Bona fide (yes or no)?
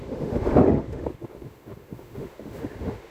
no